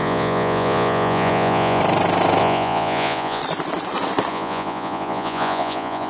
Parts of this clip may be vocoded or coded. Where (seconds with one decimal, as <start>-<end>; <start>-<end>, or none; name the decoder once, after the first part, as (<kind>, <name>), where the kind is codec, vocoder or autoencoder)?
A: 0.0-1.8 (vocoder, Vocos); 2.4-3.4; 4.3-6.1